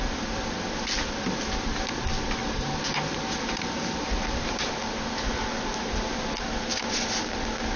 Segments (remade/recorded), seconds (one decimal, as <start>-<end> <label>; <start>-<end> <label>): 0.0-2.4 recorded; 2.4-4.7 remade; 4.7-7.8 recorded